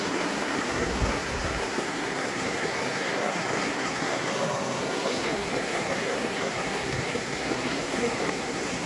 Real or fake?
fake